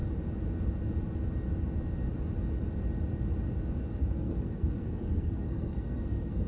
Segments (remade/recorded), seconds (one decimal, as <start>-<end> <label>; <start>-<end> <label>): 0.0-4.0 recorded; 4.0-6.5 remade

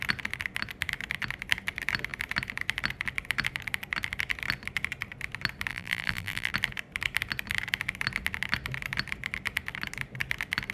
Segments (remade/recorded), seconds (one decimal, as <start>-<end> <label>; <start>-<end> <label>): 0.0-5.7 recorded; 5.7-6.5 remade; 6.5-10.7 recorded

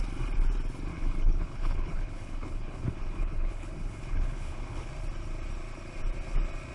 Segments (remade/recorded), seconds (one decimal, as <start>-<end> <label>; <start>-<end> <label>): 0.0-0.9 recorded; 0.9-4.9 remade; 4.9-6.7 recorded

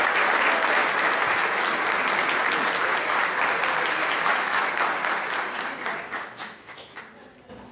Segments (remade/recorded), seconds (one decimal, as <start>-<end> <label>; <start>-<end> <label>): 0.0-4.0 recorded; 4.0-4.7 remade; 4.7-6.4 recorded; 6.4-7.0 remade; 7.0-7.7 recorded

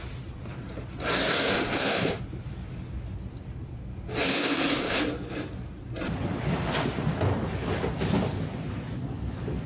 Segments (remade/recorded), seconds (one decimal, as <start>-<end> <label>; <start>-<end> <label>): 0.0-1.3 recorded; 1.3-2.2 remade; 2.2-4.3 recorded; 4.3-5.0 remade; 5.0-9.7 recorded